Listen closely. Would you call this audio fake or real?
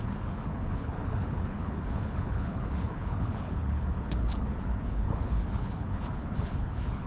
fake